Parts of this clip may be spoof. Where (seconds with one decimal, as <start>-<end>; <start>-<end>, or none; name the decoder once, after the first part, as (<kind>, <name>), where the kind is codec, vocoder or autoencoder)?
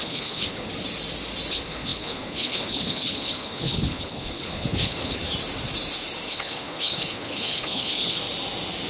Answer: 0.0-0.7 (codec, HILCodec); 1.5-5.2; 6.3-8.2